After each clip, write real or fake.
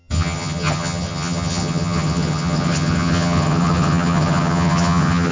fake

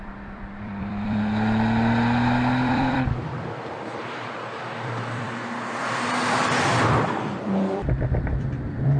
fake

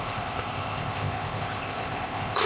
fake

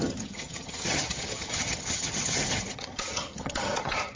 fake